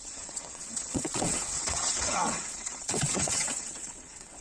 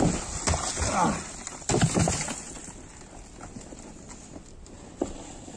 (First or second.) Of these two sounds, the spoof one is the first